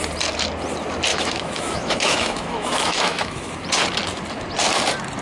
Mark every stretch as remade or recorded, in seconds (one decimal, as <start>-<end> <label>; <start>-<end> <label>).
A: 0.0-1.1 recorded; 1.1-3.5 remade; 3.5-5.2 recorded

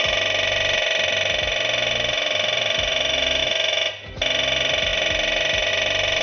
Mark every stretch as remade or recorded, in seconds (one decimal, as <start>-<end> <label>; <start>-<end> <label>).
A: 0.0-6.2 recorded

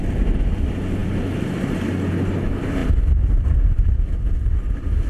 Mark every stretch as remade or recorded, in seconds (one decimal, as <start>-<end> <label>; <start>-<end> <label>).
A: 0.0-5.1 recorded

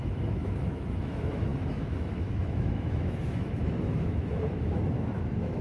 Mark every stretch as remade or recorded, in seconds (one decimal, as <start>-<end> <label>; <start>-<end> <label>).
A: 0.0-5.6 remade

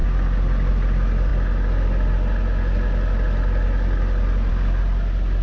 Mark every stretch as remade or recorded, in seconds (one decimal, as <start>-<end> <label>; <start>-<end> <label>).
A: 0.0-5.4 recorded

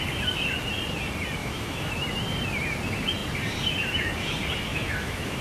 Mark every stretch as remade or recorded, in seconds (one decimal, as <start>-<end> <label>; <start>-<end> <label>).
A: 0.0-1.4 recorded; 1.4-1.9 remade; 1.9-4.7 recorded; 4.7-5.4 remade

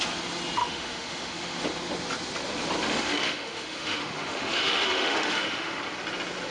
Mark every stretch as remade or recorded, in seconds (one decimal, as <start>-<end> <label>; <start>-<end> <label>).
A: 0.0-0.6 recorded; 0.6-1.6 remade; 1.6-2.9 recorded; 2.9-5.8 remade; 5.8-6.5 recorded